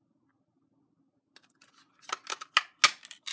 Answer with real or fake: real